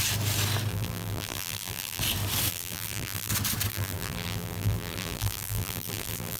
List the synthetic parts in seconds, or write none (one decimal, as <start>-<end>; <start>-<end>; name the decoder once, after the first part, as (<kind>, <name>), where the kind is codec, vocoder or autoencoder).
0.7-2.0 (vocoder, BigVGAN v2); 2.5-3.3; 3.7-6.4